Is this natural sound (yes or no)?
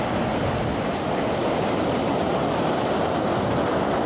yes